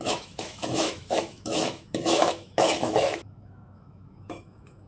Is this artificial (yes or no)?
yes